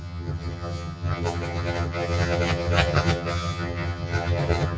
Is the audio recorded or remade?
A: remade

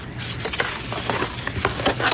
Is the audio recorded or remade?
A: recorded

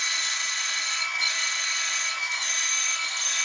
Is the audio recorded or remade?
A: recorded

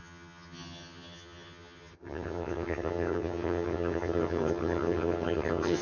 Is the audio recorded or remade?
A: remade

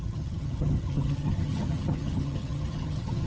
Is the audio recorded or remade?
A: remade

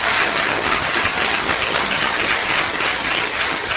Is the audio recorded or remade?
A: remade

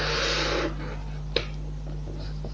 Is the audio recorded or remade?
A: recorded